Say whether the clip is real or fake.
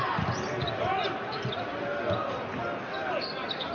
real